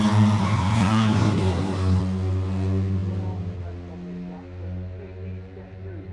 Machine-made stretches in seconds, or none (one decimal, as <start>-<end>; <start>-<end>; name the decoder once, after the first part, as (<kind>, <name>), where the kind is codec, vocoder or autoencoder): 0.4-2.0 (codec, SNAC)